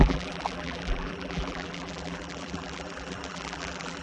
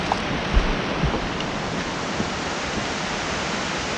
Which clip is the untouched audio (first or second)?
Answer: second